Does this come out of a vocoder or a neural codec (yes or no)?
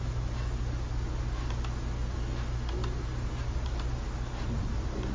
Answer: no